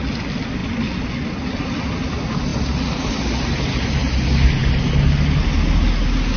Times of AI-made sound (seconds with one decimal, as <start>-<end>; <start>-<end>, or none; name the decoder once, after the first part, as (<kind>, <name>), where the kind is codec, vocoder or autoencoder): none